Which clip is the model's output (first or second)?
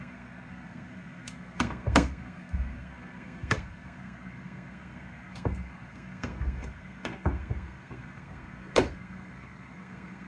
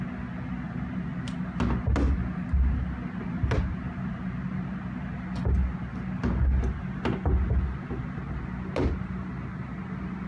first